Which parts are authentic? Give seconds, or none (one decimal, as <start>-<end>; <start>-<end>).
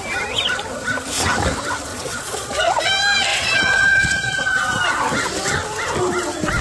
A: 0.0-1.9; 2.8-3.3; 4.6-6.6